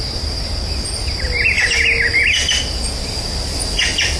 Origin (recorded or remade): recorded